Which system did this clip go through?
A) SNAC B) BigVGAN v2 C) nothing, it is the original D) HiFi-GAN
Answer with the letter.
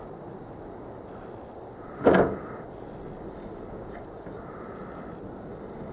C